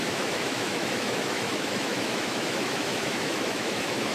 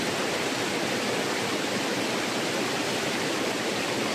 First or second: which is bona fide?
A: second